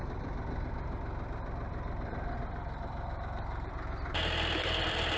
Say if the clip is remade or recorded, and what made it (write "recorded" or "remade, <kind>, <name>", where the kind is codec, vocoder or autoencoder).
remade, vocoder, BigVGAN v2